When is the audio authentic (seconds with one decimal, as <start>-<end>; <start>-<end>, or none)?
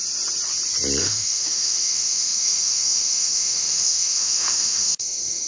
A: 0.0-1.0